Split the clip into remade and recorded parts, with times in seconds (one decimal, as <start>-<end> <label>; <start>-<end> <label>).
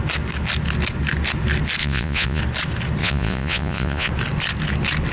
0.0-1.8 recorded; 1.8-2.4 remade; 2.4-3.0 recorded; 3.0-4.1 remade; 4.1-5.1 recorded